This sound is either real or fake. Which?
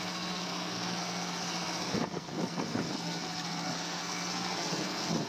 fake